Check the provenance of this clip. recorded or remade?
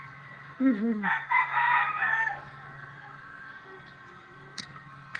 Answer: remade